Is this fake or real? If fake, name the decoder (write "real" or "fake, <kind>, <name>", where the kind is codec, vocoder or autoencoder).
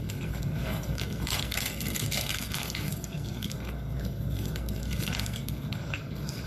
fake, codec, SNAC